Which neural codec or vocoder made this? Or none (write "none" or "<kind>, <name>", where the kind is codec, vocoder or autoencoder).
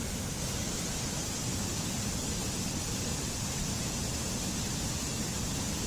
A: none